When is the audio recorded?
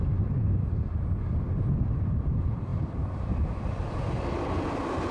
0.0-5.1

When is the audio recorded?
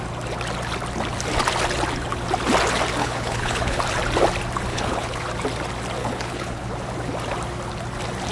0.0-3.0; 3.8-4.7; 5.2-6.0; 6.7-8.3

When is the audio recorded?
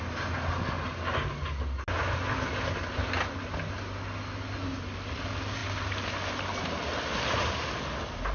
0.0-8.3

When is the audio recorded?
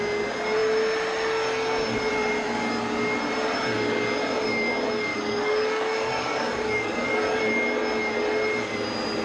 0.0-5.1; 7.4-9.2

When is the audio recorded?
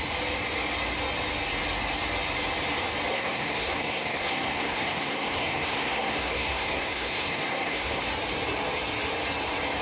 0.0-3.1; 8.0-9.8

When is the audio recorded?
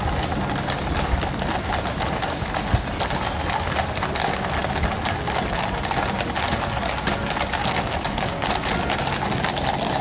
0.0-7.6; 8.5-10.0